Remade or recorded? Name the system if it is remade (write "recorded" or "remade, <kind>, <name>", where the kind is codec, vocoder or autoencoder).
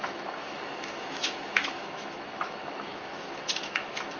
remade, autoencoder, DAC-VAE